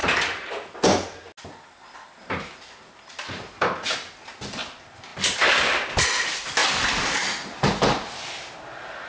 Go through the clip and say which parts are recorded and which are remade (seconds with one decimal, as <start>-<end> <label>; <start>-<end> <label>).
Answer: 0.0-9.1 recorded